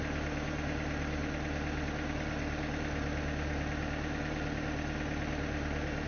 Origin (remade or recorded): recorded